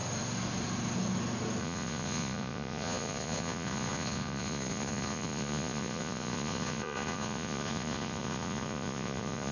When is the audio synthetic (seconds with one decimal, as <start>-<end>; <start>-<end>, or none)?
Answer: 1.6-9.5